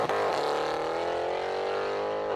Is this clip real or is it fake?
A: real